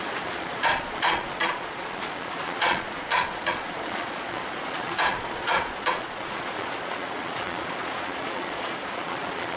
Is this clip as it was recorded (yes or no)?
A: no